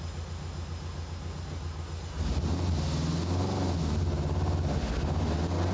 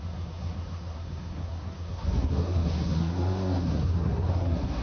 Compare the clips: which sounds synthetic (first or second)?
second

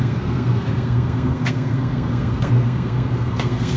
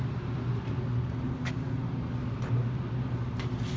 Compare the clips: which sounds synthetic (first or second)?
first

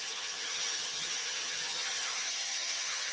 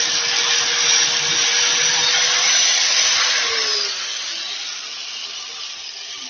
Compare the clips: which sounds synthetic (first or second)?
first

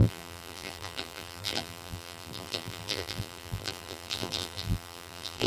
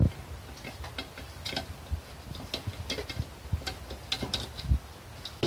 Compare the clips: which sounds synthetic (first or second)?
first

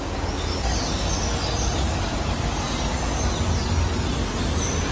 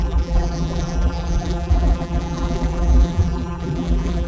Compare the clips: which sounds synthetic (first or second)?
second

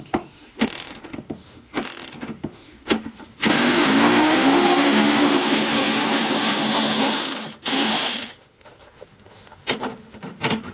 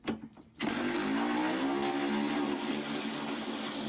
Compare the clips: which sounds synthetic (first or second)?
first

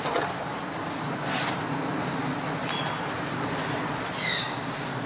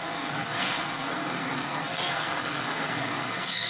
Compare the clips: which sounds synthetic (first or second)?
second